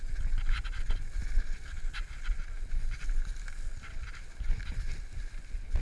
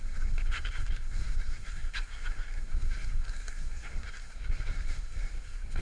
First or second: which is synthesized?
second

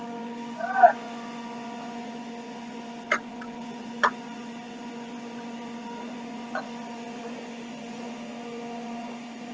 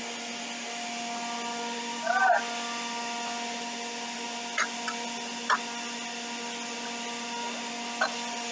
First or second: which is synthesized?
first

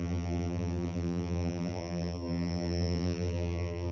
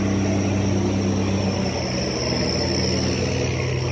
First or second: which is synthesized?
first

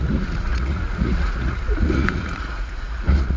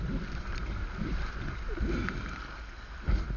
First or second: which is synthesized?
first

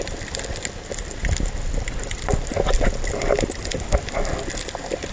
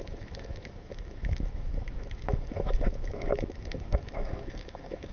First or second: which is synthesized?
second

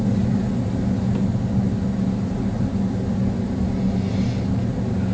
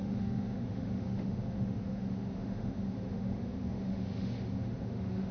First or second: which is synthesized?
second